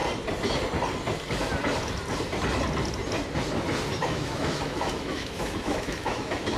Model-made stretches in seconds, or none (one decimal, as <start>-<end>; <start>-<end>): 4.0-6.6